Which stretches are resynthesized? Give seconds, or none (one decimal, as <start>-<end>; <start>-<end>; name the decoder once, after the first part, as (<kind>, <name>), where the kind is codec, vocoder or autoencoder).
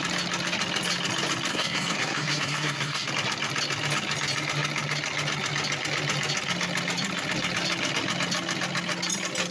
1.5-3.1 (codec, SNAC)